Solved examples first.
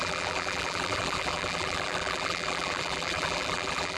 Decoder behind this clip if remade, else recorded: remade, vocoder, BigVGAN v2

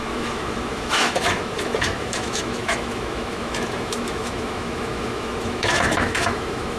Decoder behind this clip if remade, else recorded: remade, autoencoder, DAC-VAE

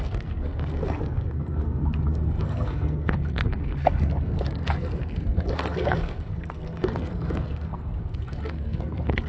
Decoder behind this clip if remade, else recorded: remade, codec, SNAC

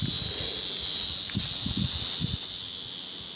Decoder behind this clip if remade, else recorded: recorded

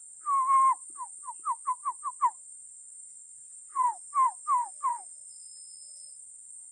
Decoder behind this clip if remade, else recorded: remade, vocoder, BigVGAN v2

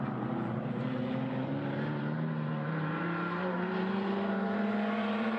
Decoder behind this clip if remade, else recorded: remade, vocoder, BigVGAN v2